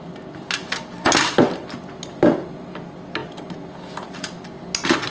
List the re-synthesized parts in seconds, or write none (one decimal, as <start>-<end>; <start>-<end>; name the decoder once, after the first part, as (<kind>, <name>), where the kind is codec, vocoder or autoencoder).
none

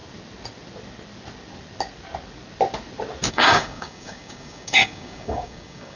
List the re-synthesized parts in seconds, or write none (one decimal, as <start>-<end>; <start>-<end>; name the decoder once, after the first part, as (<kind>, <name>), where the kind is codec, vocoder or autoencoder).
3.3-6.0 (codec, DAC)

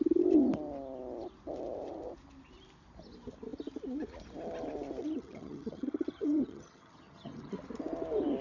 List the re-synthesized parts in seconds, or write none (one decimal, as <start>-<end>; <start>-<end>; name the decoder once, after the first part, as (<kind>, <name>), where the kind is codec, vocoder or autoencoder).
5.0-7.5 (vocoder, HiFi-GAN)

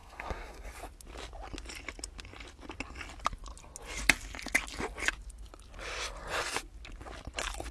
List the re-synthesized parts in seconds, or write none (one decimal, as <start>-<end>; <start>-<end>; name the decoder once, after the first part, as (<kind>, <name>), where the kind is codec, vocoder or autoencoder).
0.0-0.7 (codec, SNAC)

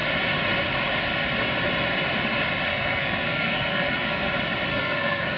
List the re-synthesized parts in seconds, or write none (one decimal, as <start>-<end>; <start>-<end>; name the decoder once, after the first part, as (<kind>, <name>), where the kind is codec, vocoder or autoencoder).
2.7-4.3 (codec, SNAC); 4.7-5.4

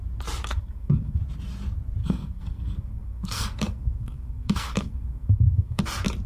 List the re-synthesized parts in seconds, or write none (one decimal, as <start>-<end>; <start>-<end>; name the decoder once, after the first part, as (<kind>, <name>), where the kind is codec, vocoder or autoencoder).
0.5-1.2 (codec, SNAC); 2.0-5.8

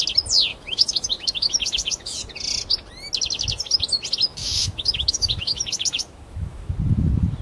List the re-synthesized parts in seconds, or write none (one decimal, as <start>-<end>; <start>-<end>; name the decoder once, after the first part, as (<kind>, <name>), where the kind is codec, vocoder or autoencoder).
0.5-2.2 (autoencoder, DAC-VAE); 4.3-6.7

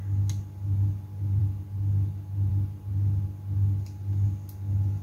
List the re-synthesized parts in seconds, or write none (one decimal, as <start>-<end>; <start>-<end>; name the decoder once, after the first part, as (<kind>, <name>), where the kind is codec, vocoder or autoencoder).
none